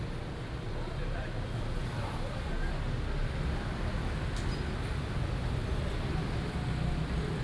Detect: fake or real real